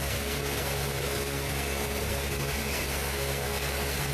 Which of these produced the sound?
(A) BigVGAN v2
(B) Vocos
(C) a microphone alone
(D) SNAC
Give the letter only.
D